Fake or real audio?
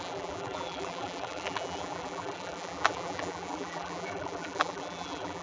fake